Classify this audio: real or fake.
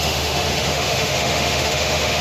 fake